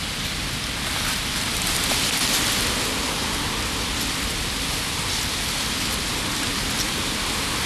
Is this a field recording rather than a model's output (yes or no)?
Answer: yes